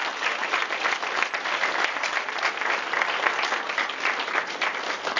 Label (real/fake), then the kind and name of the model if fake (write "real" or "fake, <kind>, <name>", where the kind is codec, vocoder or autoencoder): real